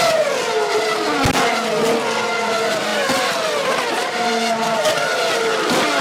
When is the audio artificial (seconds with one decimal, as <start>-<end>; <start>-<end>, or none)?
none